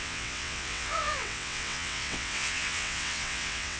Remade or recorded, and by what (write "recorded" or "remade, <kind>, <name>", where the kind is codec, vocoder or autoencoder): remade, vocoder, WaveNeXt